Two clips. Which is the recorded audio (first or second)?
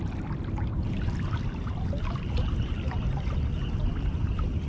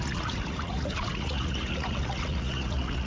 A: first